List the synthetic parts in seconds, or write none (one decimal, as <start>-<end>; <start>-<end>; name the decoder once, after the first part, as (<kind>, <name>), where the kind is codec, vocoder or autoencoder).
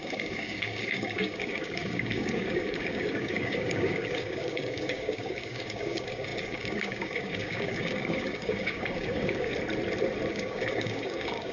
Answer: 0.0-9.5 (codec, DAC); 10.3-11.5